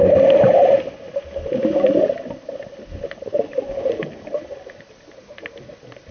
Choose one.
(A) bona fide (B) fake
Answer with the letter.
A